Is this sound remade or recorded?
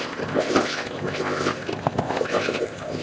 remade